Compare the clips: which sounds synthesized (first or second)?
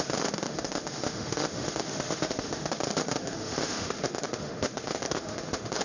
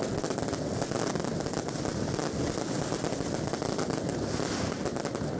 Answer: first